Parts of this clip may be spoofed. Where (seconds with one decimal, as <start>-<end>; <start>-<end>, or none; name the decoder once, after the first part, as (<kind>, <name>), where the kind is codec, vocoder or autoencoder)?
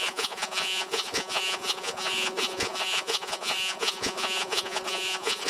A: 0.0-5.5 (vocoder, Vocos)